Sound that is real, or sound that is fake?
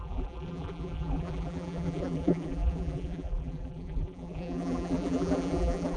fake